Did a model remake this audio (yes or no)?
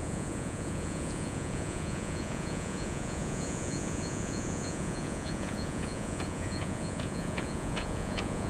yes